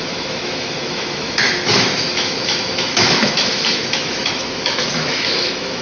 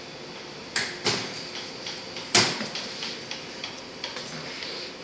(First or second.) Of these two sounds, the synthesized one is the first